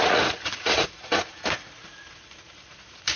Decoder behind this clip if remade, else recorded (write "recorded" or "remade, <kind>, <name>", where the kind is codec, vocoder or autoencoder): remade, vocoder, Vocos